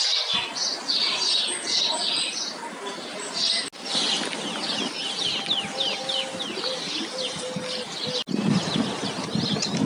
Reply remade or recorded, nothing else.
recorded